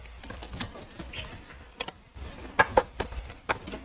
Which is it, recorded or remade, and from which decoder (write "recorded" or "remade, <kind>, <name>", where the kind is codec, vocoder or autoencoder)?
recorded